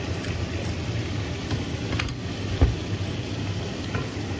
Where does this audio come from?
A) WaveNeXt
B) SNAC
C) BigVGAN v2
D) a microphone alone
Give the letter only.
C